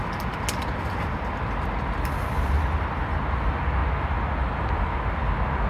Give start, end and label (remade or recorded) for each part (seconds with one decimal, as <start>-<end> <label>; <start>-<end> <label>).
0.0-5.7 recorded